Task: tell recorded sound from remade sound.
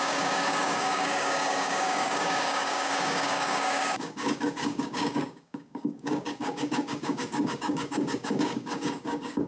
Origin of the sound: remade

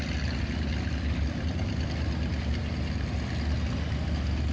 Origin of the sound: recorded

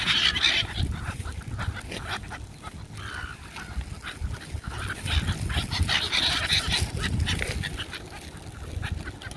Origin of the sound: recorded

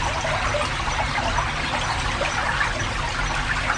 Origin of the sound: recorded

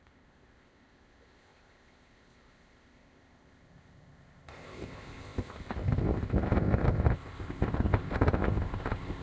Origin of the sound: remade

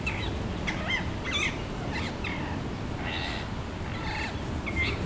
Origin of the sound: recorded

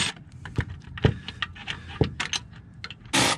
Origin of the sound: recorded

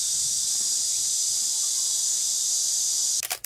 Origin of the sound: recorded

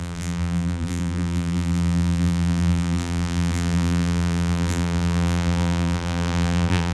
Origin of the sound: remade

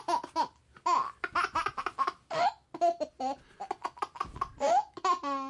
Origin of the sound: recorded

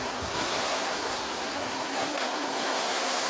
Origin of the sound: remade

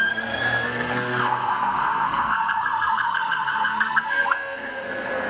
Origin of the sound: remade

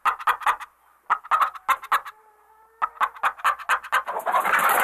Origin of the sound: recorded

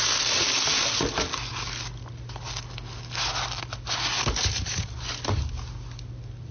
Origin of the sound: recorded